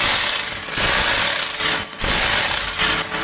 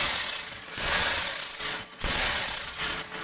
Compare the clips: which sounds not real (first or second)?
second